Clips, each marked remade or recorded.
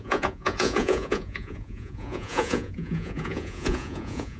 remade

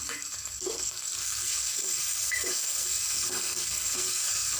remade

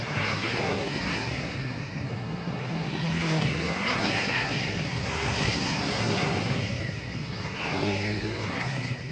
remade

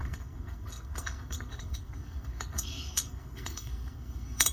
remade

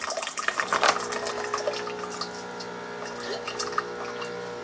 recorded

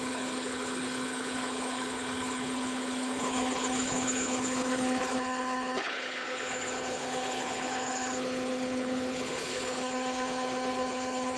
remade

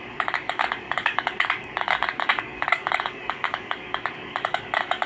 remade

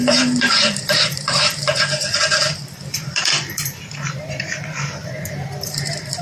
remade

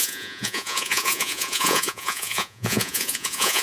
remade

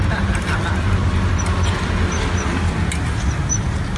recorded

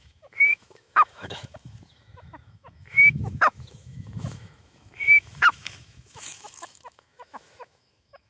remade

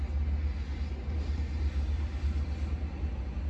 recorded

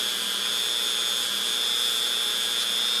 recorded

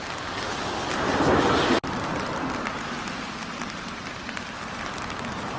recorded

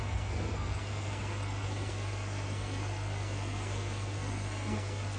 remade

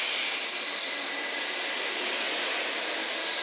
recorded